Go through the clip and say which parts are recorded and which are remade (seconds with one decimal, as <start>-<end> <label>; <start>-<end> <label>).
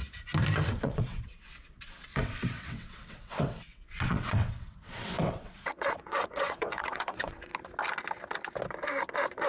0.0-0.7 recorded; 0.7-7.5 remade; 7.5-9.5 recorded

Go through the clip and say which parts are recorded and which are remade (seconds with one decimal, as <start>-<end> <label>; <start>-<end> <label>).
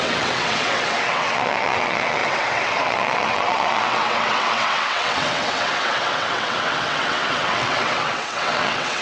0.0-9.0 remade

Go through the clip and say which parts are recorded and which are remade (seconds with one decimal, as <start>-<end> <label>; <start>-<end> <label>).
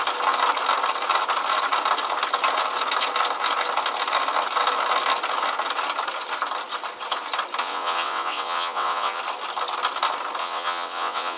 0.0-7.6 recorded; 7.6-9.2 remade; 9.2-10.4 recorded; 10.4-11.4 remade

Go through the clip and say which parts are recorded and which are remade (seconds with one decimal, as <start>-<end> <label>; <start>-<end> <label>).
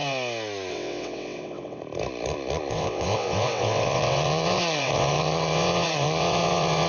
0.0-0.7 recorded; 0.7-1.8 remade; 1.8-2.7 recorded; 2.7-6.9 remade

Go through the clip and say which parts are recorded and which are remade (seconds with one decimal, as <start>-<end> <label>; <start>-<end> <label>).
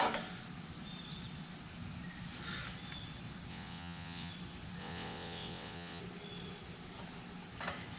0.0-3.5 recorded; 3.5-4.3 remade; 4.3-4.8 recorded; 4.8-6.0 remade; 6.0-8.0 recorded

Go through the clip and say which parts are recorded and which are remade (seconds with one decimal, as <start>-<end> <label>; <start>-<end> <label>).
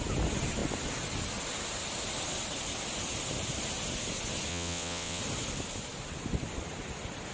0.0-4.5 recorded; 4.5-5.2 remade; 5.2-7.3 recorded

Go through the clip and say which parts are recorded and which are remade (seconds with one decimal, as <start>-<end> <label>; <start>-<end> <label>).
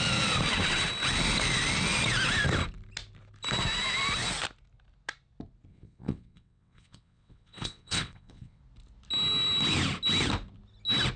0.0-5.7 recorded; 5.7-8.6 remade; 8.6-11.2 recorded